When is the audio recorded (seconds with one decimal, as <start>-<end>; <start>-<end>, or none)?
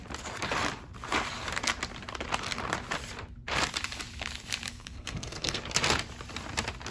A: 0.0-4.7; 5.6-6.9